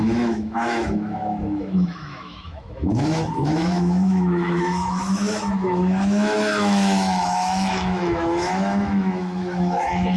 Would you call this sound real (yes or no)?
no